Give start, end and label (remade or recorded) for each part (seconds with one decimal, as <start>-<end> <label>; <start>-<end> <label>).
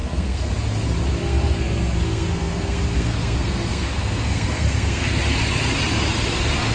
0.0-0.5 remade; 0.5-1.2 recorded; 1.2-5.2 remade; 5.2-6.7 recorded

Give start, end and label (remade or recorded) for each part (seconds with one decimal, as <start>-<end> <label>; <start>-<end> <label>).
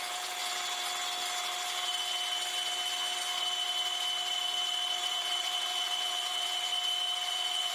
0.0-0.4 remade; 0.4-5.0 recorded; 5.0-6.7 remade; 6.7-7.3 recorded; 7.3-7.7 remade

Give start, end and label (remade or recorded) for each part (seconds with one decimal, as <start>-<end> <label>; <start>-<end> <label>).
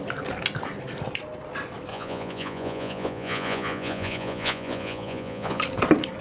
0.0-1.9 recorded; 1.9-5.6 remade; 5.6-6.2 recorded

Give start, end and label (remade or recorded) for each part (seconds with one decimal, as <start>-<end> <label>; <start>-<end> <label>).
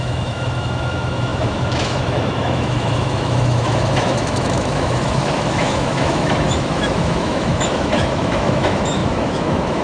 0.0-9.8 remade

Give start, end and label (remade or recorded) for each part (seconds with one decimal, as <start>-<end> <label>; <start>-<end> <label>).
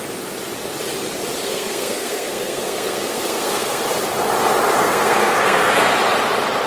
0.0-1.4 recorded; 1.4-3.8 remade; 3.8-4.8 recorded; 4.8-5.9 remade; 5.9-6.7 recorded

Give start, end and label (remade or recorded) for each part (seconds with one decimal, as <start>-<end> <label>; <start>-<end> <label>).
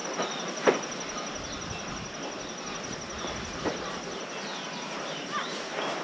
0.0-3.6 recorded; 3.6-6.0 remade